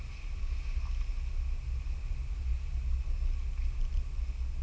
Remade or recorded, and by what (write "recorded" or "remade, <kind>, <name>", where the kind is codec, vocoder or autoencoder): recorded